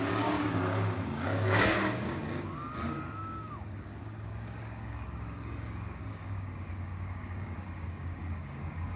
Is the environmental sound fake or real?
fake